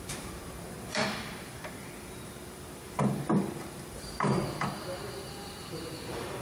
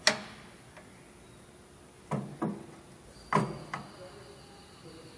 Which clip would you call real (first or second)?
second